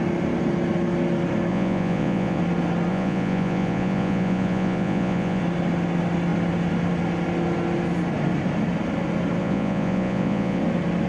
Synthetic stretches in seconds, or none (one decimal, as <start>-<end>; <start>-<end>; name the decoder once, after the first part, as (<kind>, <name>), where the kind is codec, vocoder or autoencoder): 1.5-2.4 (vocoder, Vocos); 2.9-5.4; 9.4-10.6